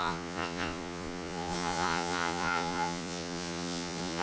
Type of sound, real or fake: fake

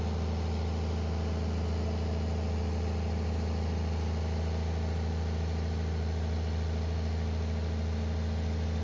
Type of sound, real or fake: real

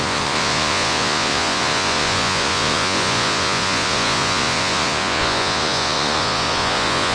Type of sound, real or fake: fake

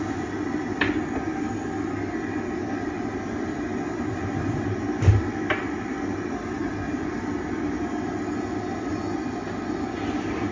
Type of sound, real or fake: real